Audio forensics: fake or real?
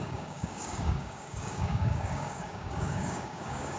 fake